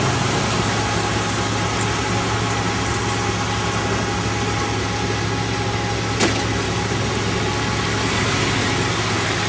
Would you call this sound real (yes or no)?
yes